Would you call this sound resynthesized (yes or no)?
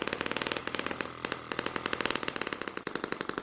no